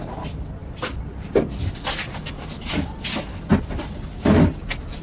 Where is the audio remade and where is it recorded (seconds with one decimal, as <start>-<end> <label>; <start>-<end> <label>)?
0.0-5.0 recorded